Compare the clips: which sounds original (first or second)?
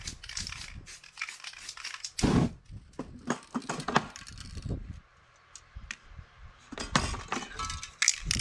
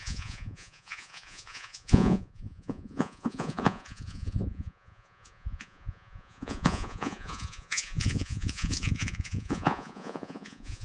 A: first